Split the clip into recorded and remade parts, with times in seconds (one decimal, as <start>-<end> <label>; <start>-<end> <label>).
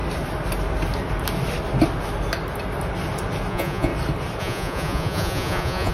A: 0.0-3.5 recorded; 3.5-3.9 remade; 3.9-4.4 recorded; 4.4-5.9 remade